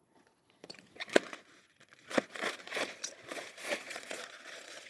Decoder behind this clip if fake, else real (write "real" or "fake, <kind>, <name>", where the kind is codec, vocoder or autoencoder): fake, vocoder, Vocos